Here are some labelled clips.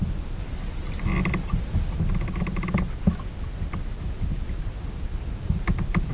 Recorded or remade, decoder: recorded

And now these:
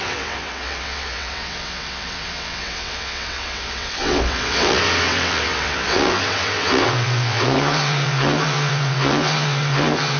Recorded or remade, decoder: remade, vocoder, WaveNeXt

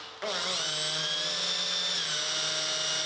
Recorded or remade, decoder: recorded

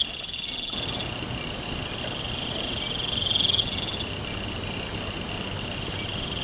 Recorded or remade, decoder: recorded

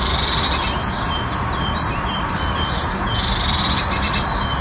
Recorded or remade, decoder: recorded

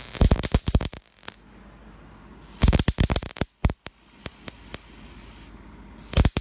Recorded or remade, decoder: recorded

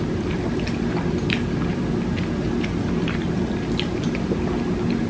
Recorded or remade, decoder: recorded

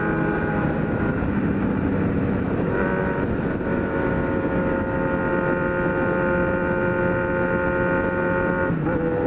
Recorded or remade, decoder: recorded